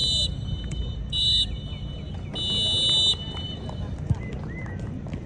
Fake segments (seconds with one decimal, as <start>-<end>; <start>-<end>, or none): 0.0-1.6